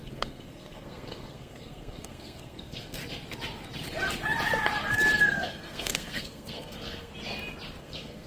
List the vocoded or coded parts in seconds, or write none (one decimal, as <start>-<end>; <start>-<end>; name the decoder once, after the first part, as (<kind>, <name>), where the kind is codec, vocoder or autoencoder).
0.0-3.0 (codec, SNAC); 5.2-7.1; 7.8-8.3